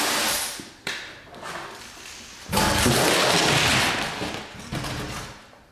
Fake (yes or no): no